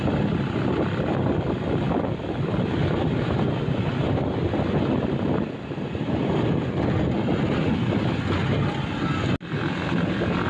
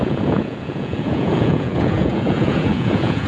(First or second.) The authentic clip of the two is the first